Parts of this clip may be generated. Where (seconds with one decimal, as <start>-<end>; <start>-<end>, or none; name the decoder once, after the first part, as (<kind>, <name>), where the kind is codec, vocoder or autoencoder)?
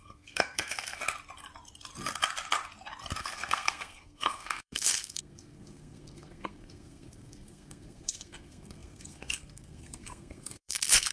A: 0.0-1.0 (codec, SNAC); 3.2-11.1